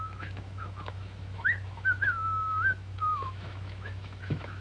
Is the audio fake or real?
fake